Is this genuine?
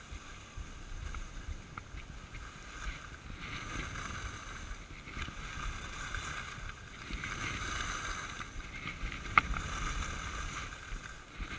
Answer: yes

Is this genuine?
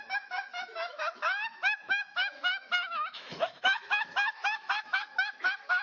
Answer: no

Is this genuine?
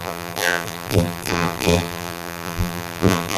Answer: no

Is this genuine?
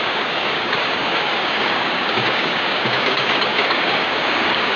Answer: no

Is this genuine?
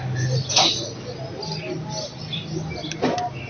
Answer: yes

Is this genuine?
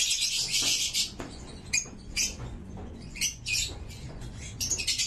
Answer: no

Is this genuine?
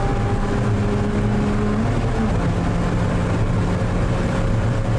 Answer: yes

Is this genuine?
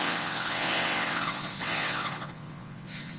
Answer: no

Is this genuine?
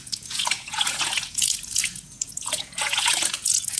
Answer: no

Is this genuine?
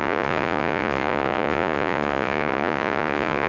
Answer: no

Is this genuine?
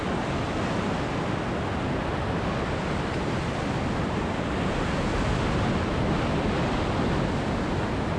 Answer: yes